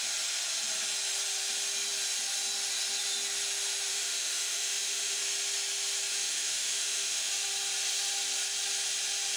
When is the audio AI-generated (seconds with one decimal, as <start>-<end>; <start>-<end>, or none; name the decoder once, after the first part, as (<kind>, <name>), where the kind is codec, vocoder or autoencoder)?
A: 3.9-5.2 (autoencoder, DAC-VAE); 6.1-7.3